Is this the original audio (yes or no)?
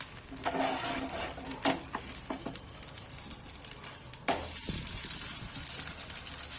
yes